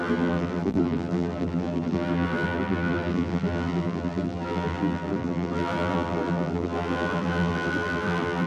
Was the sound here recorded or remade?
remade